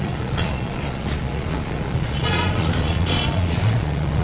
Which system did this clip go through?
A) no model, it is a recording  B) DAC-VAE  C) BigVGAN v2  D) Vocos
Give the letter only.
D